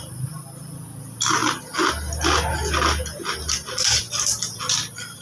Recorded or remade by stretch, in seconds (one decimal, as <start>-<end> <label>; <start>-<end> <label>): 0.0-5.2 recorded